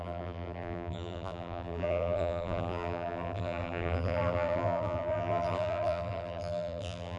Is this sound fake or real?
fake